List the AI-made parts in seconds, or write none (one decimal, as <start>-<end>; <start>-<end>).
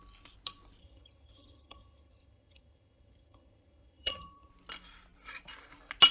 0.8-4.5